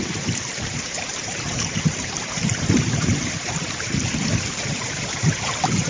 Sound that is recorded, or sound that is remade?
remade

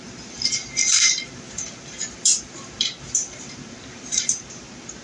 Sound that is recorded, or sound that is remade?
remade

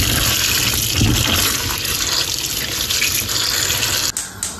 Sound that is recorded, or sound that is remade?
recorded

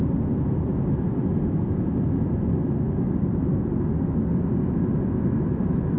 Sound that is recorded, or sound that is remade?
recorded